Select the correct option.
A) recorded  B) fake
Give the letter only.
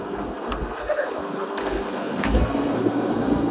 B